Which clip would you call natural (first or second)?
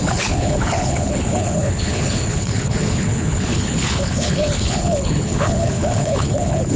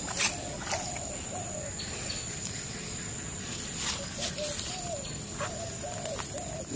second